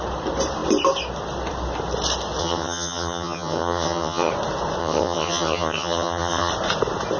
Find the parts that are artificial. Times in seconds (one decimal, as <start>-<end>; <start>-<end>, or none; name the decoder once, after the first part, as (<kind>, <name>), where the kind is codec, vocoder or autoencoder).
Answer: 2.4-4.3 (vocoder, HiFi-GAN); 4.8-6.5